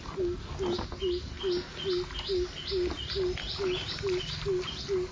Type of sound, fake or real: real